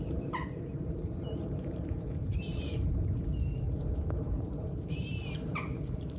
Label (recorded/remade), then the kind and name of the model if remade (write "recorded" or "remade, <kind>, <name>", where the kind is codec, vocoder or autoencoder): remade, vocoder, BigVGAN v2